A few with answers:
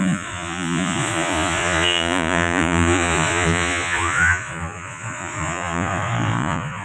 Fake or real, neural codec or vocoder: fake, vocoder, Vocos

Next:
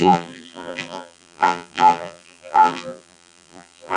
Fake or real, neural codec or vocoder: fake, vocoder, BigVGAN v2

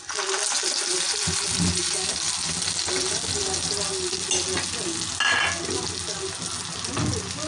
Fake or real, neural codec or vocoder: real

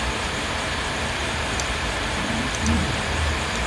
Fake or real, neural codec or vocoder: fake, vocoder, BigVGAN v2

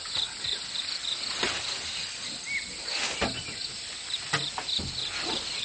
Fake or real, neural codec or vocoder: real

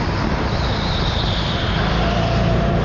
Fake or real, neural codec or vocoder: real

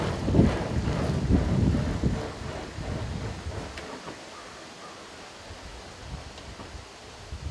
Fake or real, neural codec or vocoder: real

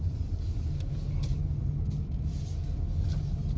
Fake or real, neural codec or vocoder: real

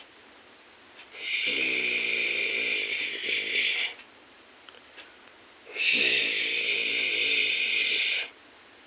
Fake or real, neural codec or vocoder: real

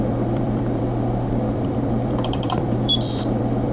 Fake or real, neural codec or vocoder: fake, vocoder, BigVGAN v2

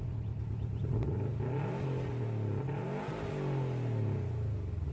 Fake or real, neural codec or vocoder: real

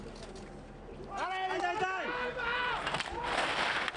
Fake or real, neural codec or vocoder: real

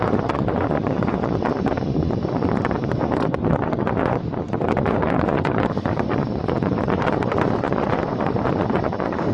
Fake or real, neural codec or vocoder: fake, vocoder, Vocos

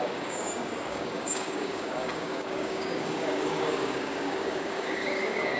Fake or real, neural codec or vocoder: fake, codec, DAC